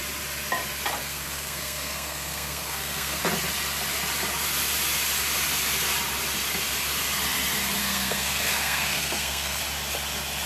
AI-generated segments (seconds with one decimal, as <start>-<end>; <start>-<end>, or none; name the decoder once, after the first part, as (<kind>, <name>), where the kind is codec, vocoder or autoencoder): 1.0-3.2 (codec, SNAC); 7.8-9.6